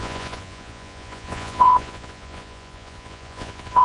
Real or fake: fake